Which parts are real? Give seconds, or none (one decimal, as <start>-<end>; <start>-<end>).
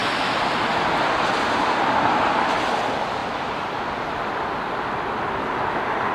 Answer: 0.0-3.2; 3.7-6.1